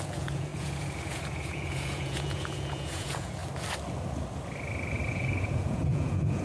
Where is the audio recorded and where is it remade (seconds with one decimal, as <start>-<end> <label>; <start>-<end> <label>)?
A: 0.0-3.4 remade; 3.4-5.1 recorded; 5.1-6.4 remade